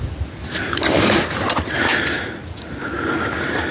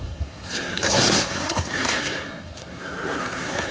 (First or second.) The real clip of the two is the first